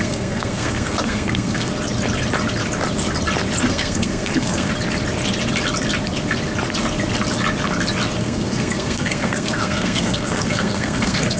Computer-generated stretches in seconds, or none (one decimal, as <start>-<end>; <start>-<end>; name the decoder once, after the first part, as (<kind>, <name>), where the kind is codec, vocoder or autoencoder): 0.0-1.7 (codec, SNAC); 3.7-4.7; 8.2-11.4